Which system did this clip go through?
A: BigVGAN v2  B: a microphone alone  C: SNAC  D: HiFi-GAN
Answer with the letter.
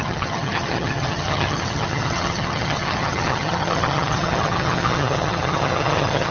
D